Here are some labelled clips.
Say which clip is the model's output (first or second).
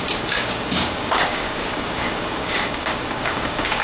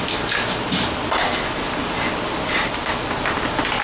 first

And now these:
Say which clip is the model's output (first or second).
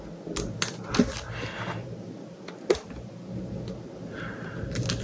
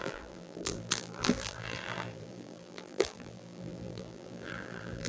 second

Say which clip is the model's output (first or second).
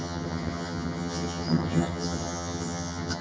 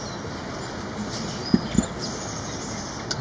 first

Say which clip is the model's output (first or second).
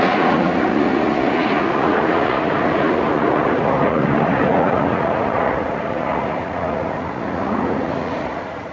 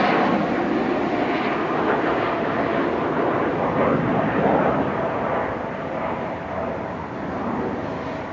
first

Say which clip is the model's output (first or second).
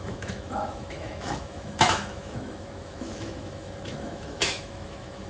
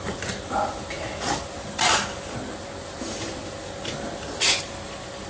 first